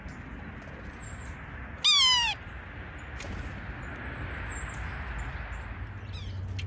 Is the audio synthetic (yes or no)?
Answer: no